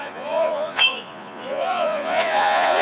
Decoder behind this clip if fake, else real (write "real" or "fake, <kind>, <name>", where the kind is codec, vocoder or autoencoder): fake, vocoder, Vocos